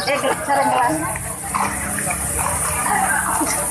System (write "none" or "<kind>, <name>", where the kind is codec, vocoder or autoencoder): none